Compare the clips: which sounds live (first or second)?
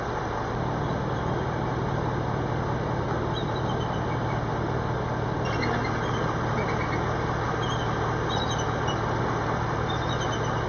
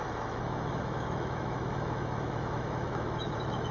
first